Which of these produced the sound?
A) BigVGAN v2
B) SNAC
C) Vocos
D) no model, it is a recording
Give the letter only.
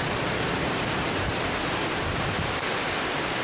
A